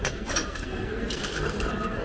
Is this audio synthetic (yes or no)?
yes